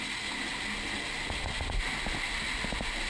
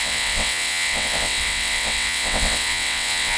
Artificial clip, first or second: second